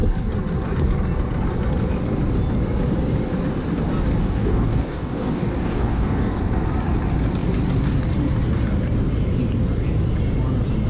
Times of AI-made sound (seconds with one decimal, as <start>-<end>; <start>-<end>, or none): 4.2-6.4